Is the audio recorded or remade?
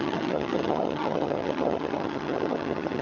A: remade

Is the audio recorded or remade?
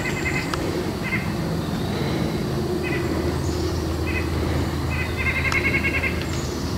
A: recorded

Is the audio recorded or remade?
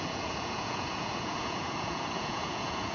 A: remade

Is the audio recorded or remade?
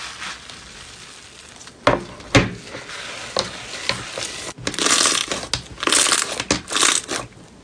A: recorded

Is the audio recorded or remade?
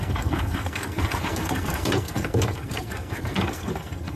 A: remade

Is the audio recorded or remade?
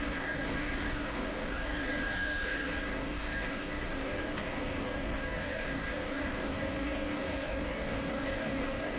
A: remade